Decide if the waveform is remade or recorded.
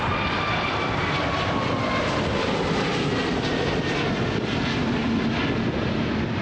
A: recorded